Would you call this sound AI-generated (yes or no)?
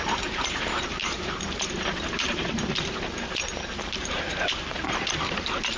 yes